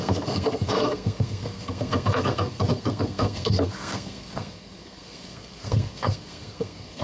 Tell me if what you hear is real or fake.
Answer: fake